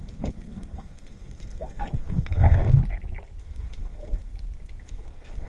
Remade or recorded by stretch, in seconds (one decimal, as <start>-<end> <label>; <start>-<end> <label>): 0.0-2.8 remade; 2.8-3.4 recorded; 3.4-4.3 remade; 4.3-4.8 recorded; 4.8-5.5 remade